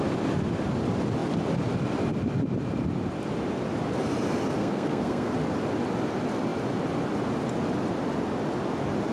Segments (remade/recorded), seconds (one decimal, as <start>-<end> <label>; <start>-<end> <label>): 0.0-4.6 recorded; 4.6-5.3 remade; 5.3-9.1 recorded